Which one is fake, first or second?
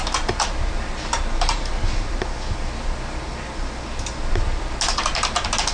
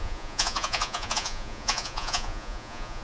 second